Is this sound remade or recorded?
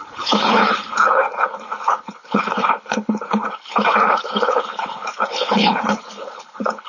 remade